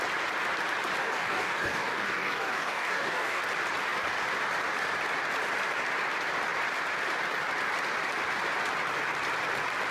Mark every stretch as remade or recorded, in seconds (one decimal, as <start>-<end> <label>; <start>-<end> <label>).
0.0-1.0 recorded; 1.0-3.4 remade; 3.4-9.9 recorded